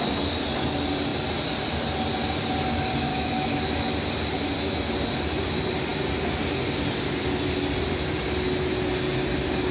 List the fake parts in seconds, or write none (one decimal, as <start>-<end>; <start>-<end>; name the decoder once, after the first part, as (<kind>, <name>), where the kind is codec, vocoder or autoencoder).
3.1-3.6 (autoencoder, DAC-VAE)